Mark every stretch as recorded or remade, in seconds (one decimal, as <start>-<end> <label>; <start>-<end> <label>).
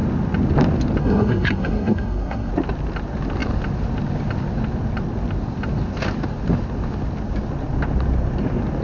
0.0-1.0 recorded; 1.0-2.5 remade; 2.5-8.8 recorded